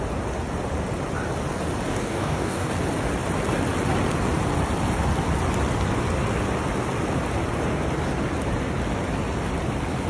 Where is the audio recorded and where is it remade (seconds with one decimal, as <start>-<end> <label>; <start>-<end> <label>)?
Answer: 0.0-1.9 recorded; 1.9-2.7 remade; 2.7-10.1 recorded